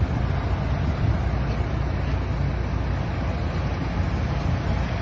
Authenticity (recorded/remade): recorded